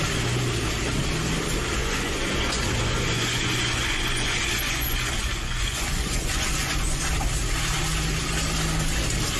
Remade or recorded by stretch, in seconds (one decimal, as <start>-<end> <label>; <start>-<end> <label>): 0.0-1.8 recorded; 1.8-7.0 remade; 7.0-9.4 recorded